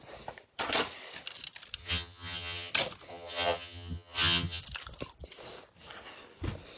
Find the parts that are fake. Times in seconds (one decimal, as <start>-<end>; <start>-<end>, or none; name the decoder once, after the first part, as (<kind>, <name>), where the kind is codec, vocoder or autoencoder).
1.8-2.7 (vocoder, HiFi-GAN); 3.1-4.6

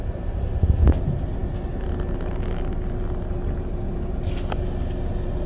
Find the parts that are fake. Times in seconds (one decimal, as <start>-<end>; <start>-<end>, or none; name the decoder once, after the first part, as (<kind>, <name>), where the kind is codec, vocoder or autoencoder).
none

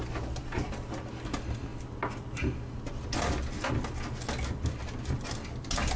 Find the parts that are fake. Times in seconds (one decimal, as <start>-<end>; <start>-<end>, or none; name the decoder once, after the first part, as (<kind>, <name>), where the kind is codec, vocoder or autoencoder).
none

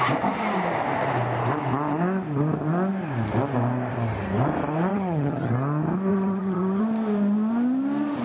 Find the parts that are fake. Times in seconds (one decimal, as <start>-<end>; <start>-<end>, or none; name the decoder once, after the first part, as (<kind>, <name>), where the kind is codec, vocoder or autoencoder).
4.9-5.5 (vocoder, HiFi-GAN); 6.1-6.8